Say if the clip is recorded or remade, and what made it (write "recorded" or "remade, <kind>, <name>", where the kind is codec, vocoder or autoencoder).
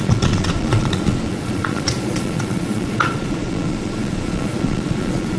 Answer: remade, vocoder, Vocos